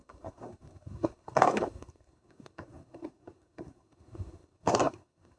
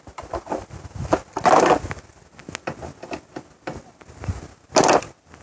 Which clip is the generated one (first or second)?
first